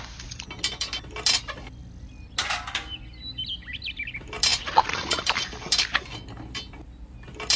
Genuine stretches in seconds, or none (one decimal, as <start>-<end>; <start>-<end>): 0.0-4.5; 5.2-7.6